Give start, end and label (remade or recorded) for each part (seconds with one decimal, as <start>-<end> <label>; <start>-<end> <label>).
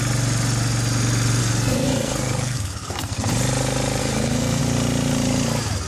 0.0-1.4 recorded; 1.4-3.3 remade; 3.3-4.0 recorded; 4.0-4.6 remade; 4.6-5.9 recorded